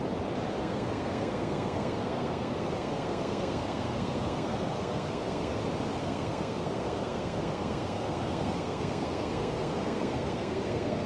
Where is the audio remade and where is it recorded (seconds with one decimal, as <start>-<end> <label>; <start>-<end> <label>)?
0.0-0.6 recorded; 0.6-5.6 remade; 5.6-6.0 recorded; 6.0-11.1 remade